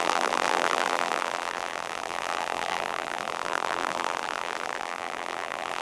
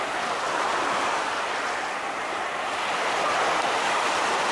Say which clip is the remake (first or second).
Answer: first